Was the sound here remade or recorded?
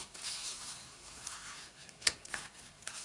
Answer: remade